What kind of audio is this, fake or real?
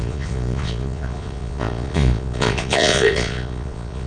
fake